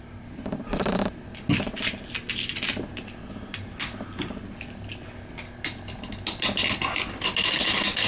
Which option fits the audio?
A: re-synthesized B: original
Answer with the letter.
B